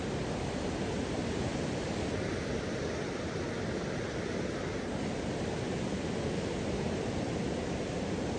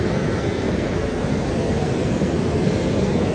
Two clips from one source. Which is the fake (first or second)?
second